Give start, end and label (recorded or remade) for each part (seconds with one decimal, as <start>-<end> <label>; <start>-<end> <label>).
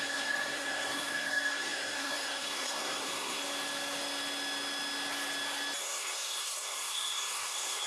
0.0-3.4 remade; 3.4-5.8 recorded; 5.8-7.9 remade